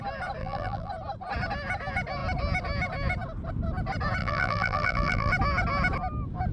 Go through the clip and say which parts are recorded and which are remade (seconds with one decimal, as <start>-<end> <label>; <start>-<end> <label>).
0.0-0.4 recorded; 0.4-0.9 remade; 0.9-4.2 recorded; 4.2-5.3 remade; 5.3-6.5 recorded